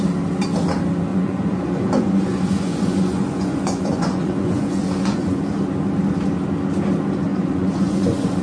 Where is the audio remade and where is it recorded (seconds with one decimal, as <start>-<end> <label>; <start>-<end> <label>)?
0.0-1.1 recorded; 1.1-5.4 remade; 5.4-7.3 recorded; 7.3-8.4 remade